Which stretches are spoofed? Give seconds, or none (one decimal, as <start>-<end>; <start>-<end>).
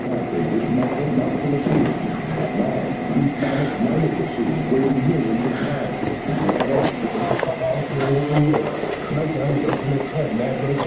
7.0-9.1